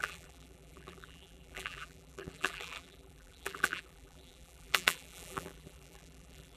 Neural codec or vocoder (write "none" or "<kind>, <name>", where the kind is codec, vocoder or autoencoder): vocoder, BigVGAN v2